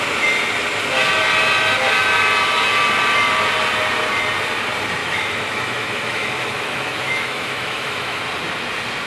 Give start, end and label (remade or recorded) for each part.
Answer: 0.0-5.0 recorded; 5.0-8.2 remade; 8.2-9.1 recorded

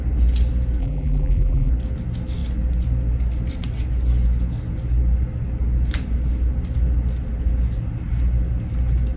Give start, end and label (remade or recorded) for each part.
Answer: 0.0-0.8 recorded; 0.8-1.7 remade; 1.7-9.2 recorded